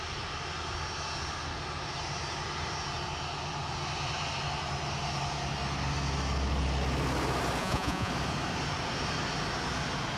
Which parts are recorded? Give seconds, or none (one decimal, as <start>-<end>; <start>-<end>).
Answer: 0.0-7.6; 8.1-10.2